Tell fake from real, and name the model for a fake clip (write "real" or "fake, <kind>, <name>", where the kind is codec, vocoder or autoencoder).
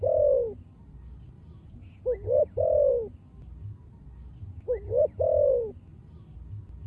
real